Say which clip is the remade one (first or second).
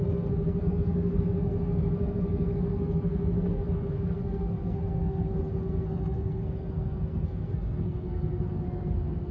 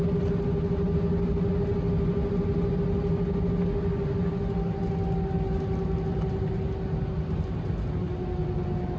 first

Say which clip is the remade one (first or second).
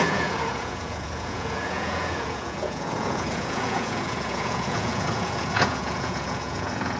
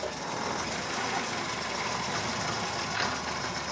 first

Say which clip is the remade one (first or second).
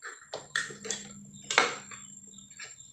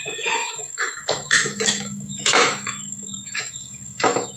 second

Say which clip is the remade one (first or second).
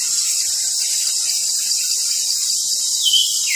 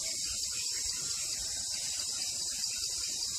first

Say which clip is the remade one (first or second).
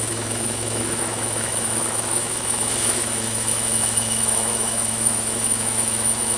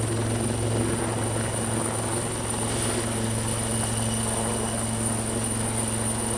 first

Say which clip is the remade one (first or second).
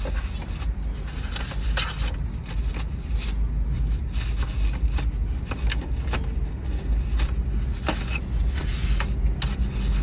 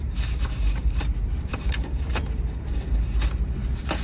second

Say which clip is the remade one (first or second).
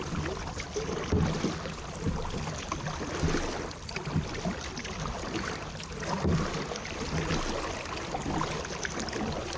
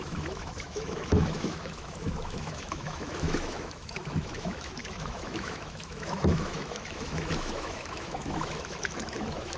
second